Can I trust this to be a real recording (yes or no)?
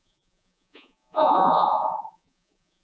no